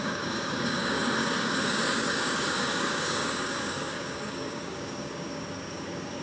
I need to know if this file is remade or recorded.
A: remade